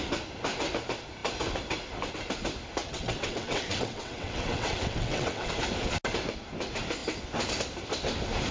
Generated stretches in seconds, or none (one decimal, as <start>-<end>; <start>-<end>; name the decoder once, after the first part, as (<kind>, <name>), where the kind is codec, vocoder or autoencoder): 2.8-5.5 (vocoder, WaveNeXt)